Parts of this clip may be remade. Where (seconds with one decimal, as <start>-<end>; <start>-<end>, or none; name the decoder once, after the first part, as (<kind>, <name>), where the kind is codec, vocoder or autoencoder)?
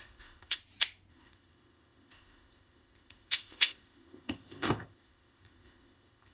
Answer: 0.0-0.6 (codec, ZipCodec); 1.1-6.3